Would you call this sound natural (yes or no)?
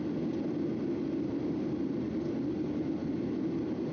yes